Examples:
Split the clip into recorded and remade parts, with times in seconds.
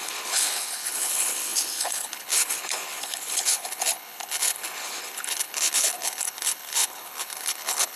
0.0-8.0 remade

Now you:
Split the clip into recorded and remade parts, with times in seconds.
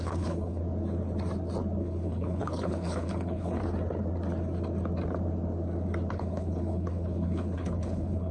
0.0-0.6 remade; 0.6-1.8 recorded; 1.8-3.6 remade; 3.6-6.1 recorded; 6.1-8.3 remade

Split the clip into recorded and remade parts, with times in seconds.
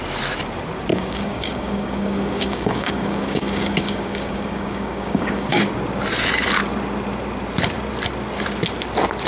0.0-0.9 recorded; 0.9-5.7 remade; 5.7-9.3 recorded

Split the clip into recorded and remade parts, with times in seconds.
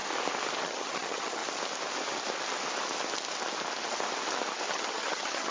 0.0-0.6 recorded; 0.6-1.4 remade; 1.4-4.7 recorded; 4.7-5.5 remade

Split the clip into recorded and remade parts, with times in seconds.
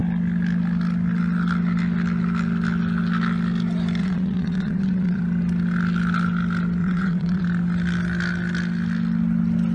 0.0-4.0 recorded; 4.0-5.2 remade; 5.2-6.8 recorded; 6.8-7.4 remade; 7.4-9.7 recorded